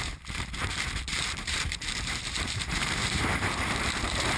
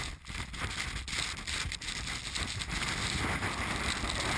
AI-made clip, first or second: first